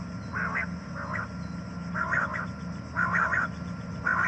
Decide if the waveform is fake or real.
real